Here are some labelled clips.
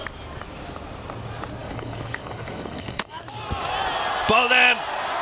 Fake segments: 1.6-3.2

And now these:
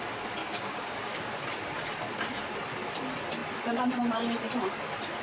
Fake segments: 0.4-1.3

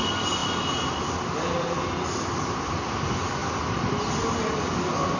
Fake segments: none

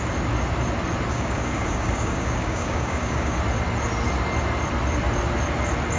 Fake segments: 1.1-3.4

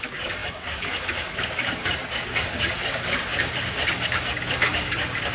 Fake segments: 0.0-5.3

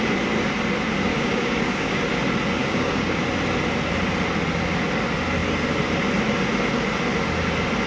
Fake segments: 1.1-2.0; 2.6-3.2

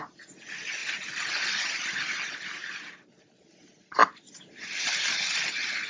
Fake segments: none